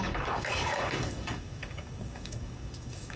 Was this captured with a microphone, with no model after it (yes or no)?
no